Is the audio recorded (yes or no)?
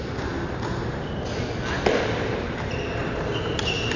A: yes